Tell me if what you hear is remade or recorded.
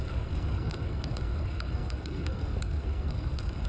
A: remade